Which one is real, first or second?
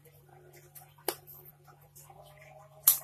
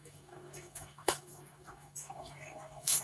first